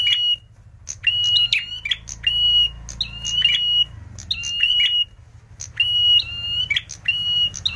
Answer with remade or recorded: recorded